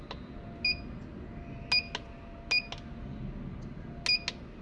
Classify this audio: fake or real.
real